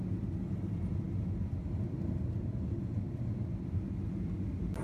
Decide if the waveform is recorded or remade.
recorded